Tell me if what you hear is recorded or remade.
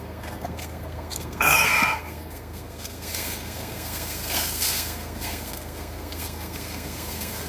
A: remade